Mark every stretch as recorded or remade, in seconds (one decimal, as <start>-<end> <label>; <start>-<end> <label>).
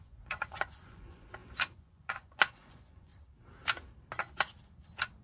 0.0-3.1 remade; 3.1-5.2 recorded